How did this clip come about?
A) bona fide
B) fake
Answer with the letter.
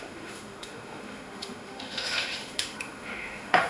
B